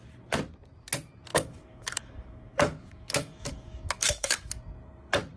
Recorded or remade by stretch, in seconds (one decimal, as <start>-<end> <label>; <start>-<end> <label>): 0.0-1.3 recorded; 1.3-4.5 remade; 4.5-5.4 recorded